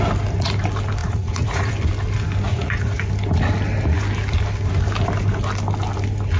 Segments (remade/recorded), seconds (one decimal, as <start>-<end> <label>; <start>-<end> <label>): 0.0-1.0 recorded; 1.0-1.7 remade; 1.7-2.5 recorded; 2.5-3.1 remade; 3.1-6.4 recorded